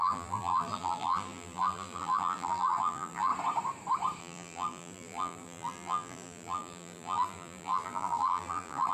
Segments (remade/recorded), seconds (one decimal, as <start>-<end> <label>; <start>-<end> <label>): 0.0-3.3 remade; 3.3-4.2 recorded; 4.2-8.9 remade